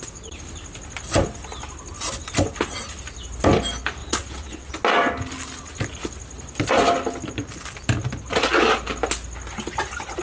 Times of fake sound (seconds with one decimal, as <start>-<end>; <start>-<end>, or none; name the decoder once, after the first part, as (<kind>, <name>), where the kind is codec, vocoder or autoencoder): 4.0-4.7 (vocoder, WaveNeXt)

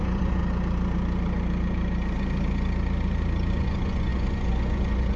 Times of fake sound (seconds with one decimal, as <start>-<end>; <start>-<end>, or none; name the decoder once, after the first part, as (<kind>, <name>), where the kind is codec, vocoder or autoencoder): 0.0-0.4 (vocoder, Vocos); 3.5-5.2

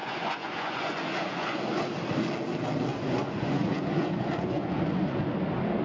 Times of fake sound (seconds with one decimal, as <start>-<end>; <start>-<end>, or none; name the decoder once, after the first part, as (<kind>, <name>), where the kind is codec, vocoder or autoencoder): 0.0-1.6 (vocoder, Vocos); 2.9-5.2

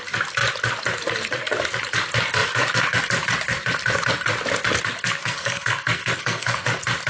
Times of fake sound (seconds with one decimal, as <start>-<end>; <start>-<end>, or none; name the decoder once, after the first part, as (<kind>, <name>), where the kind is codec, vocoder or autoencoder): 5.2-6.6 (codec, SNAC)

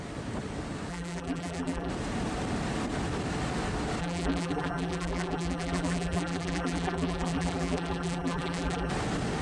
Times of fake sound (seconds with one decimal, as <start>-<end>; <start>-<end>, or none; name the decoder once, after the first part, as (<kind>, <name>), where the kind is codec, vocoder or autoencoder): 0.9-1.9 (vocoder, BigVGAN v2); 4.0-8.9

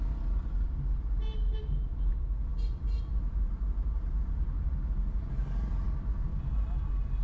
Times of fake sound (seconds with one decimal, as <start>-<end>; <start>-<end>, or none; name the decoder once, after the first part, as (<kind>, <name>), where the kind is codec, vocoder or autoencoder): none